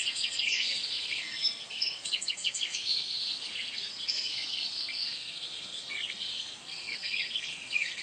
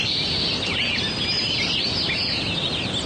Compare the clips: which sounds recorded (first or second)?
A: second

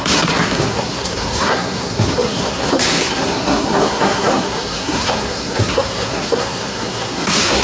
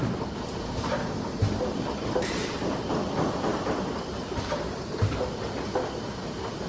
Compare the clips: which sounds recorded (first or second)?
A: second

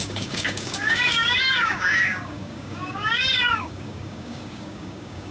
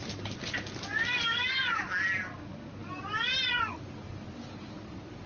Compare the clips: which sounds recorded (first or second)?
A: second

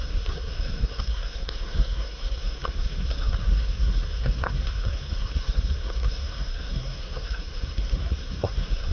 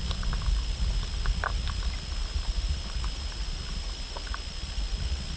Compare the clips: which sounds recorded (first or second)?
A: second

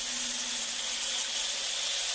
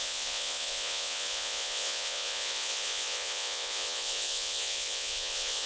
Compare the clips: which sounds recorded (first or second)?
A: first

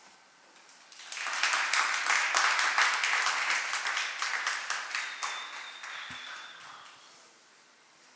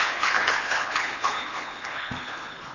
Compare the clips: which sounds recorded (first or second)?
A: first